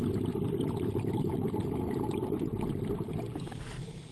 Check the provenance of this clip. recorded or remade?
recorded